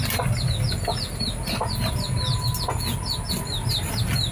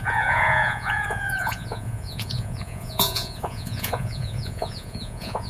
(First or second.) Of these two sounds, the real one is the first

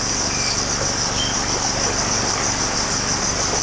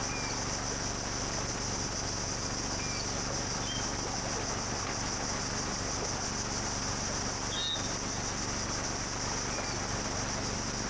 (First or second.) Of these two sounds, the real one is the second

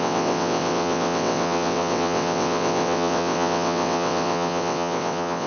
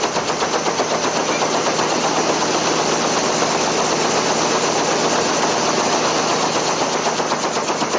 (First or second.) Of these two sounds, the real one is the second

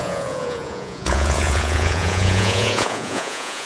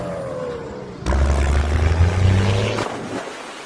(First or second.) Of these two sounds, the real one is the second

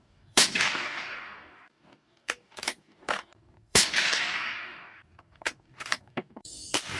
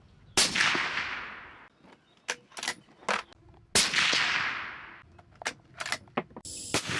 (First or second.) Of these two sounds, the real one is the second